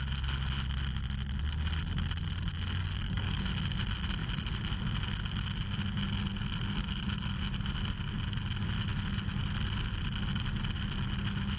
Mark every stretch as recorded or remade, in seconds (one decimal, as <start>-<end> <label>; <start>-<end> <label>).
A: 0.0-2.8 recorded; 2.8-3.4 remade; 3.4-11.6 recorded